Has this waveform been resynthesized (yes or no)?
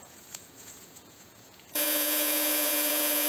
yes